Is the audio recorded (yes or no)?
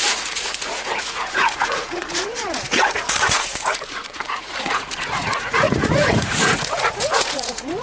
no